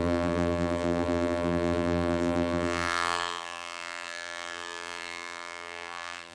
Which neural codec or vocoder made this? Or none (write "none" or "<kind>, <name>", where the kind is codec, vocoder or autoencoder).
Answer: vocoder, BigVGAN v2